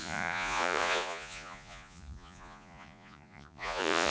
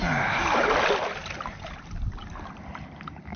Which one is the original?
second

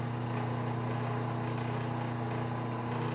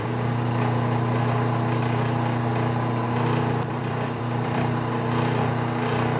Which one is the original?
first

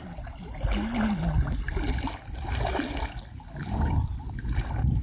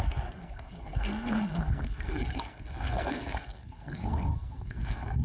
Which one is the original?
first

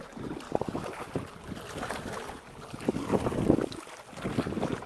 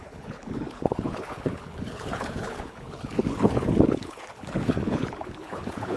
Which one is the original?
first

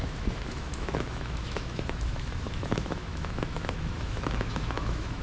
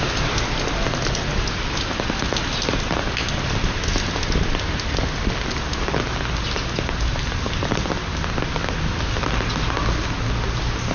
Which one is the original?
second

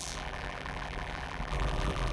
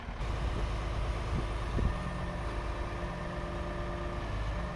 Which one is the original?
second